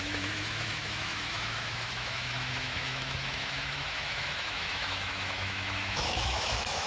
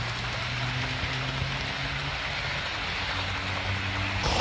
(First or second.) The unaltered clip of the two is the second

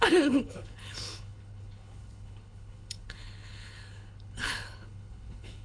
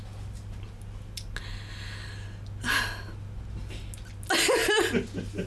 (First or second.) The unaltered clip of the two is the second